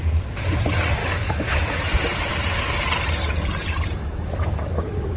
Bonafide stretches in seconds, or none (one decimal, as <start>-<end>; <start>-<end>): 0.0-1.0; 1.9-4.0